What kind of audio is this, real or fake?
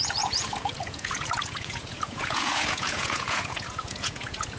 fake